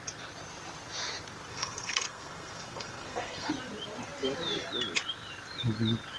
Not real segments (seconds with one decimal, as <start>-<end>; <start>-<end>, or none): 1.5-3.5